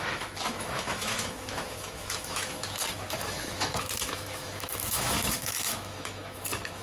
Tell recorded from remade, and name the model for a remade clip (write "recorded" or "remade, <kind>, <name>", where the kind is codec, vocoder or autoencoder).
remade, autoencoder, DAC-VAE